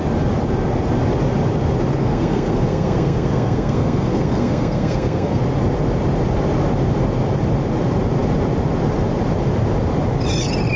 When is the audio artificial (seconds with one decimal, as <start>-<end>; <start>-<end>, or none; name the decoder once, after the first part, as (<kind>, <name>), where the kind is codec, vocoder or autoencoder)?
2.0-5.4 (codec, SNAC)